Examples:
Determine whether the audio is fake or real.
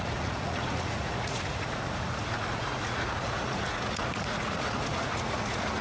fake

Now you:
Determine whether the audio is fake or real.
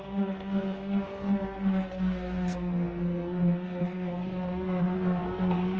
fake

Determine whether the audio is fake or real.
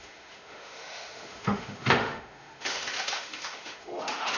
fake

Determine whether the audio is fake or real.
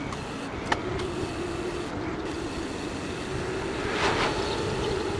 real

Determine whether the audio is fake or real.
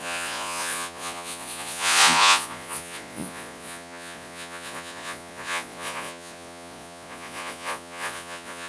fake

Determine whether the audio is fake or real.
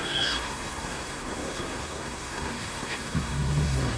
fake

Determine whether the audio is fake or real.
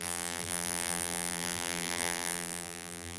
fake